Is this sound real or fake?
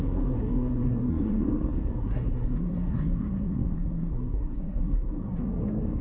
fake